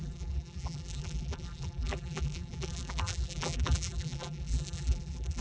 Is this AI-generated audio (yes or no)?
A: yes